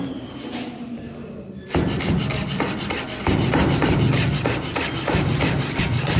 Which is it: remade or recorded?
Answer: remade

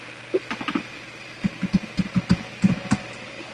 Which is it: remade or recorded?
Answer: recorded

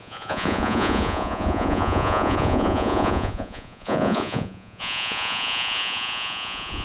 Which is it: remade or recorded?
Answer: remade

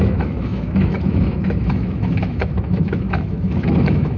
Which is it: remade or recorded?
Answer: remade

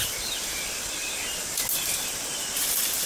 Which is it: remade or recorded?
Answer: recorded